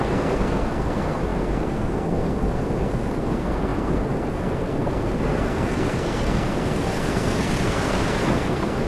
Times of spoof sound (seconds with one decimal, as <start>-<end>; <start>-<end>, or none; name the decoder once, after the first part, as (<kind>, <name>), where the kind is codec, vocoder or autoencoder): 0.0-8.9 (codec, SNAC)